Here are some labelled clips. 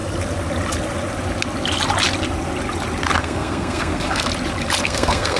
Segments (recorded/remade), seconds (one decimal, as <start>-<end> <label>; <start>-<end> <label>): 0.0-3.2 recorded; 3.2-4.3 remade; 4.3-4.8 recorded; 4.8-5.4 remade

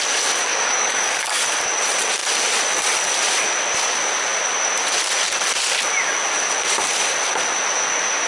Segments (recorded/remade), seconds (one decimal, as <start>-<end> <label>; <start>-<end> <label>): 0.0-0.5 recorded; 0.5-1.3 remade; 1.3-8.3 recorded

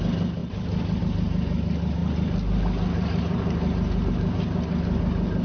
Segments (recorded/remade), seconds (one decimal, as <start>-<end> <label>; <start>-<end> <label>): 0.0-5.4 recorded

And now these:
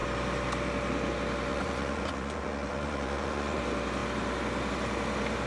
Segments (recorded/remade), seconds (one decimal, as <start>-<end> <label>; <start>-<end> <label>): 0.0-1.5 recorded; 1.5-3.6 remade; 3.6-5.5 recorded

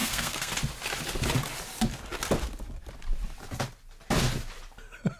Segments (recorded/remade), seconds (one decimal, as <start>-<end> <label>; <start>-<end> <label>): 0.0-0.5 remade; 0.5-5.2 recorded